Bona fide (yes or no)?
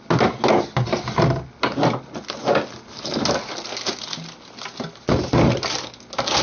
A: yes